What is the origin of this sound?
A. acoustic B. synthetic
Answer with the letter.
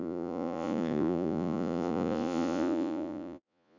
B